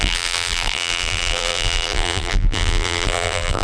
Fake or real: fake